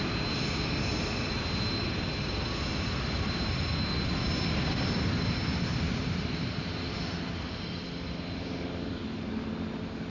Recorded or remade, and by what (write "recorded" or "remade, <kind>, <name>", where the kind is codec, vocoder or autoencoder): recorded